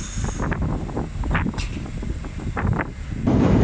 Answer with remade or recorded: recorded